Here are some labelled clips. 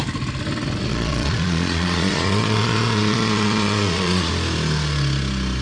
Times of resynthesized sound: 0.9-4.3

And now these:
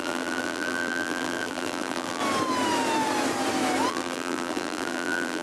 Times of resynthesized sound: 0.0-2.2; 3.9-5.4

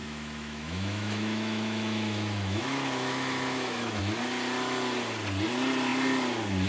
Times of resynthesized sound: 0.0-4.0

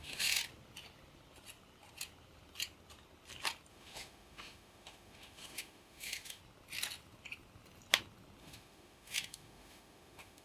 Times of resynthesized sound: 0.0-0.4; 3.7-6.4; 8.4-10.4

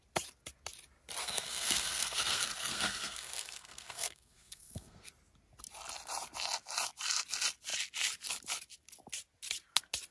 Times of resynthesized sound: 1.2-5.1